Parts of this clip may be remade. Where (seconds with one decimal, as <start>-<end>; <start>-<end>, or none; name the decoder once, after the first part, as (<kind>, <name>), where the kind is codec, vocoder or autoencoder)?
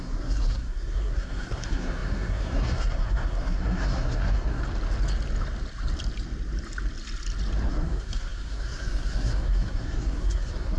0.0-4.6 (codec, SNAC); 7.7-10.8